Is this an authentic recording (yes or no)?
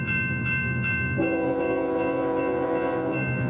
no